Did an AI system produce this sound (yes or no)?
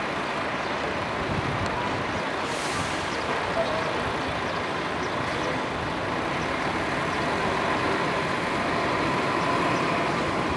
no